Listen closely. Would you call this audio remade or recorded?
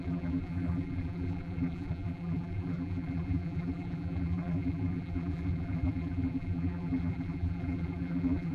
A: remade